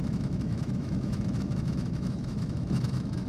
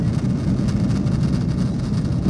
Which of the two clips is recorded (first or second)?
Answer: second